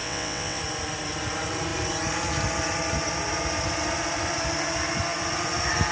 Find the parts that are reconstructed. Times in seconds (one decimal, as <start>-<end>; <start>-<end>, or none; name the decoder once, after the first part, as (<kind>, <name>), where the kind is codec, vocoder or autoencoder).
0.0-0.6 (vocoder, WaveNeXt)